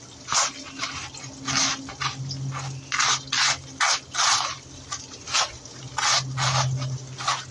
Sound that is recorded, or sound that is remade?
recorded